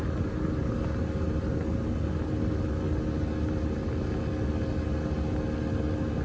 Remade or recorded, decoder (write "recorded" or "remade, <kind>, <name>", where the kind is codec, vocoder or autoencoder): recorded